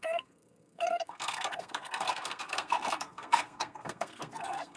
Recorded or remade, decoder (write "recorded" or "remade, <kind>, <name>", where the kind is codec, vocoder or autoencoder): remade, codec, SNAC